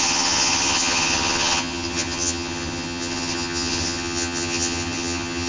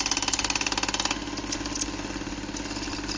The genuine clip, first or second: second